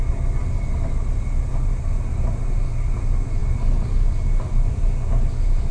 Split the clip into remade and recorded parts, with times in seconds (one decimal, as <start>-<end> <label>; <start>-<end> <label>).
0.0-5.7 recorded